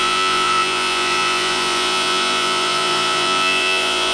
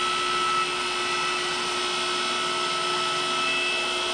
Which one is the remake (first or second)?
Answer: first